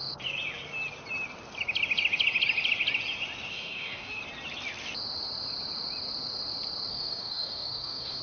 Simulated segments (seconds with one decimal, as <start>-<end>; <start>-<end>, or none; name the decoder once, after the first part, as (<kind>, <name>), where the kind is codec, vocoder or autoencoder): 3.5-4.2 (codec, DAC); 6.9-8.2